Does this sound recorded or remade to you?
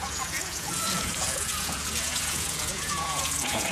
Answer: remade